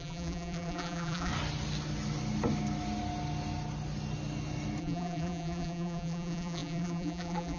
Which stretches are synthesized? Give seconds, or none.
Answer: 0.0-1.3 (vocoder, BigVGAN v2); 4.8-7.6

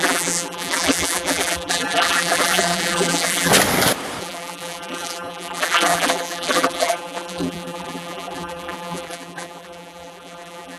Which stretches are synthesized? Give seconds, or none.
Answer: 0.0-3.5 (vocoder, BigVGAN v2); 4.2-10.8

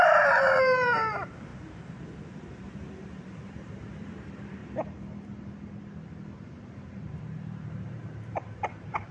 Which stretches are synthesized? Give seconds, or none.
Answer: 0.0-4.6 (vocoder, BigVGAN v2); 7.2-9.1

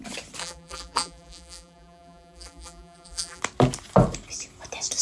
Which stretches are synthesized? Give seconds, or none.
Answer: 0.4-3.4 (vocoder, BigVGAN v2)

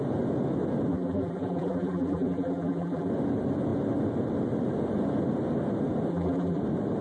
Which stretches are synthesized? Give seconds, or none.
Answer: 0.9-3.1 (vocoder, BigVGAN v2); 6.1-6.6

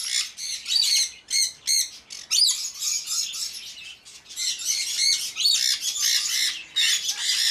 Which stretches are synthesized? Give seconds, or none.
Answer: none

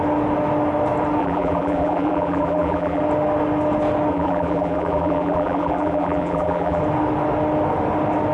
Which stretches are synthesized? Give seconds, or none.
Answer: 1.2-3.0 (vocoder, BigVGAN v2); 4.1-6.8

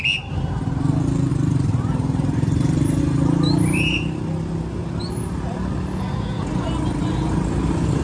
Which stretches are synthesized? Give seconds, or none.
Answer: 1.3-3.0 (vocoder, BigVGAN v2)